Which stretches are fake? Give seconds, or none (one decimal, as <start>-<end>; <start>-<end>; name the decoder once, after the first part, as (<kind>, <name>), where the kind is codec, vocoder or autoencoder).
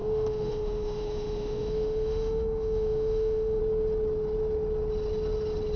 0.0-3.6 (autoencoder, DAC-VAE)